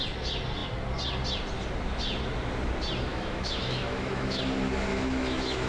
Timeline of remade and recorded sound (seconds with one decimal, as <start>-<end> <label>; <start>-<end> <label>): 0.0-3.1 recorded; 3.1-4.4 remade; 4.4-4.9 recorded; 4.9-5.7 remade

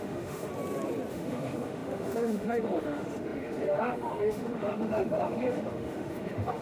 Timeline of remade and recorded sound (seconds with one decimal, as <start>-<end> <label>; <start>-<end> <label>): 0.0-0.5 remade; 0.5-1.1 recorded; 1.1-6.6 remade

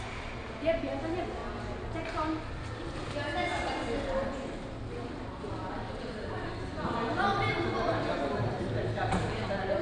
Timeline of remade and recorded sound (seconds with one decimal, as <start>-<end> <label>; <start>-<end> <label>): 0.0-9.8 recorded

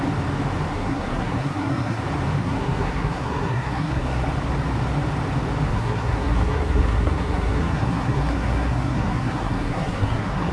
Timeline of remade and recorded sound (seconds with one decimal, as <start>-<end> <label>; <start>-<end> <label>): 0.0-0.7 recorded; 0.7-2.0 remade; 2.0-2.4 recorded; 2.4-4.2 remade; 4.2-5.7 recorded; 5.7-10.5 remade

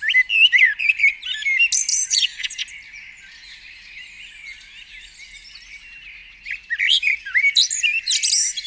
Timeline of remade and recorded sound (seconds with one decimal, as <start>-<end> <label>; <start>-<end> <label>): 0.0-1.9 recorded; 1.9-2.6 remade; 2.6-8.7 recorded

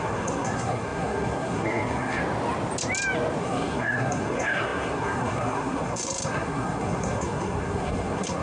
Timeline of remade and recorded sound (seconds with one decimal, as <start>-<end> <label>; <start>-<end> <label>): 0.0-2.2 remade; 2.2-3.4 recorded; 3.4-8.4 remade

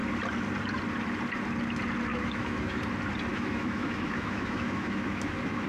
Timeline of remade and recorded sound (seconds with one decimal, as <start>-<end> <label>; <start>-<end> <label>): 0.0-2.1 recorded; 2.1-2.8 remade; 2.8-3.3 recorded; 3.3-5.7 remade